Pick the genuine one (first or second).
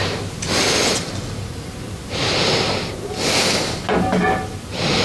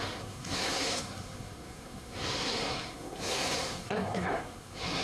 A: first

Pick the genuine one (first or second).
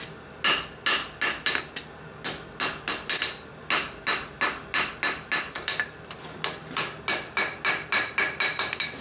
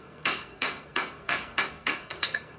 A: first